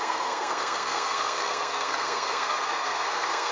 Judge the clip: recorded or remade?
remade